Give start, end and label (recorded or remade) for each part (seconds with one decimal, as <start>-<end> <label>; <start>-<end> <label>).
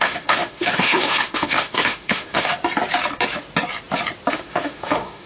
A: 0.0-2.6 remade; 2.6-4.3 recorded; 4.3-5.3 remade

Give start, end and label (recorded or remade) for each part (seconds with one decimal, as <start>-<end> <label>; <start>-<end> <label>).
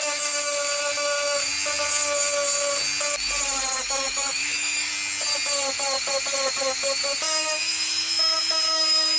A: 0.0-1.5 remade; 1.5-3.8 recorded; 3.8-4.9 remade; 4.9-7.2 recorded; 7.2-9.2 remade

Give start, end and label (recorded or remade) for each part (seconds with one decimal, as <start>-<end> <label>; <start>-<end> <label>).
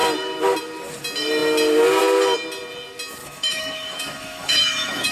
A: 0.0-3.2 recorded; 3.2-5.1 remade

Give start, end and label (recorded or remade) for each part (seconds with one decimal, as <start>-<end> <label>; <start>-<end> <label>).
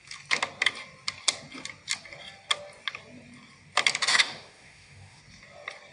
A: 0.0-4.1 recorded; 4.1-5.2 remade; 5.2-5.9 recorded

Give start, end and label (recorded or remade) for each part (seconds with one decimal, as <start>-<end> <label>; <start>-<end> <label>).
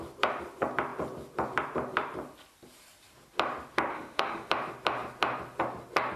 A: 0.0-3.9 recorded; 3.9-4.5 remade; 4.5-6.2 recorded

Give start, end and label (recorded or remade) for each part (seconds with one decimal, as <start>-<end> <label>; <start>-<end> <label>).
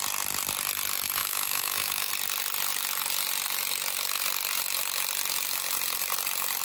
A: 0.0-1.2 recorded; 1.2-2.1 remade; 2.1-6.6 recorded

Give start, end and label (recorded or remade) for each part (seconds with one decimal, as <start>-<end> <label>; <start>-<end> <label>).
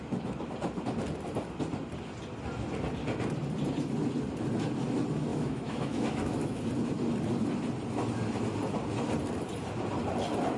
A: 0.0-5.3 recorded; 5.3-6.6 remade; 6.6-10.6 recorded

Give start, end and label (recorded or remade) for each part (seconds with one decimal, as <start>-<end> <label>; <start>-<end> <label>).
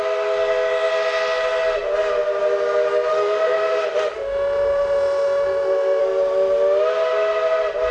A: 0.0-3.1 recorded; 3.1-6.0 remade; 6.0-7.9 recorded